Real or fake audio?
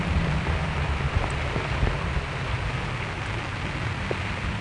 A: real